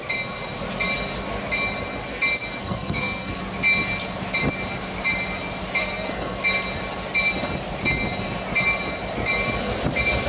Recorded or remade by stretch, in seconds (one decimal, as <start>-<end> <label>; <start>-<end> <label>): 0.0-2.6 recorded; 2.6-3.4 remade; 3.4-5.8 recorded; 5.8-6.4 remade; 6.4-10.3 recorded